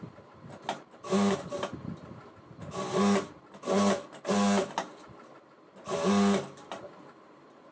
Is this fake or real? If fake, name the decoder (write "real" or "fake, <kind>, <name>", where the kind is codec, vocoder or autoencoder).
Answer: real